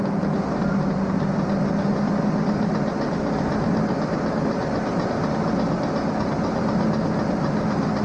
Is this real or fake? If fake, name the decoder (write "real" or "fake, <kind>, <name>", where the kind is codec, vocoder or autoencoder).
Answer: real